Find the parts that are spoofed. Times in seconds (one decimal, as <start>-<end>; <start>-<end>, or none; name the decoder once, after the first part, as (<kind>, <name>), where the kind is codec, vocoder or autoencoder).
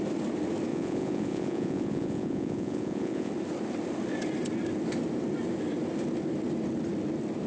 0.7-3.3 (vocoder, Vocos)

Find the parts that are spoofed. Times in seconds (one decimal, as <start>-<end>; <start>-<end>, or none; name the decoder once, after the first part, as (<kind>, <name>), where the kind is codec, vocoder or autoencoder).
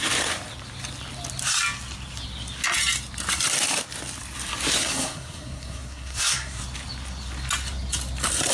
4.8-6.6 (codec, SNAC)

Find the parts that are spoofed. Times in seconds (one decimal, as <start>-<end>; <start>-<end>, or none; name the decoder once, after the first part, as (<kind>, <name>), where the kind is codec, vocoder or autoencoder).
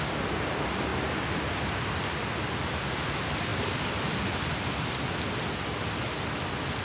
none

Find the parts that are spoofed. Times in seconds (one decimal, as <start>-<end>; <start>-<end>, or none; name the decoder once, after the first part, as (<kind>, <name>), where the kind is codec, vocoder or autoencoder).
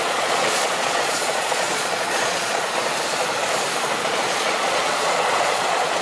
0.0-2.6 (vocoder, Vocos); 4.0-6.0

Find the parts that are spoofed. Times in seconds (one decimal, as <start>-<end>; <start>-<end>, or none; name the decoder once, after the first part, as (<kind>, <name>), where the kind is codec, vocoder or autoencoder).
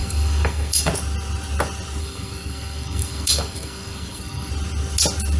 0.0-0.9 (codec, SNAC); 2.0-4.5